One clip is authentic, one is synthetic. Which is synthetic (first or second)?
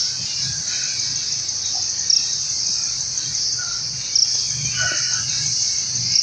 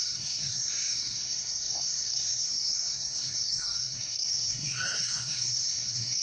second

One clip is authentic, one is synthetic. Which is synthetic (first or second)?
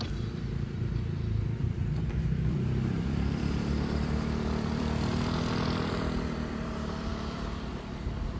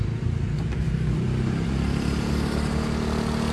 first